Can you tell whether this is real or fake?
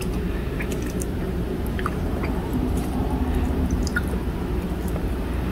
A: fake